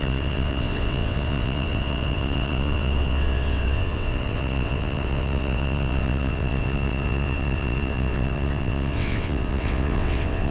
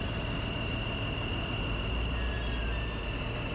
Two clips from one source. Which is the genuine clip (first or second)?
second